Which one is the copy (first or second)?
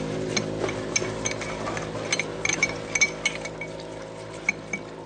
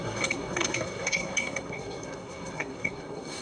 second